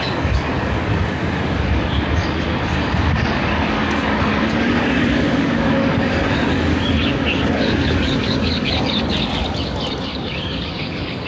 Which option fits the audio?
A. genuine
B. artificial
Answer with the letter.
B